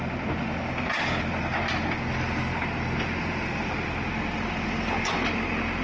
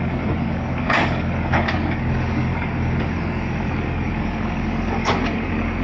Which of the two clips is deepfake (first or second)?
second